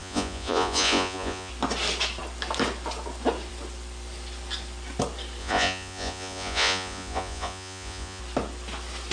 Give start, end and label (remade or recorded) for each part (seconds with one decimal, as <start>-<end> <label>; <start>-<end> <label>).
0.0-1.5 remade; 1.5-5.4 recorded; 5.4-8.2 remade; 8.2-9.1 recorded